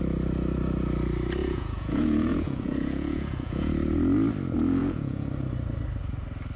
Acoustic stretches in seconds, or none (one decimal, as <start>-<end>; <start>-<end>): 0.0-1.4; 3.7-4.8; 5.3-6.6